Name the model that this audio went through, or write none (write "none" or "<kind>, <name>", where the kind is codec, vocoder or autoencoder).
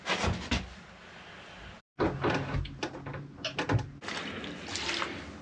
none